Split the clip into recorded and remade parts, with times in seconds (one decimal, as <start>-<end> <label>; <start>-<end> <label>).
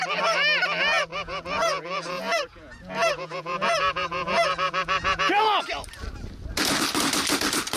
0.0-1.1 recorded; 1.1-5.6 remade; 5.6-7.8 recorded